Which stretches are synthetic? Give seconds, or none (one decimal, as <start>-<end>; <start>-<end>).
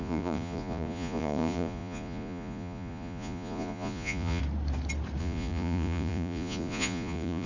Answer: 0.0-4.4; 5.2-7.5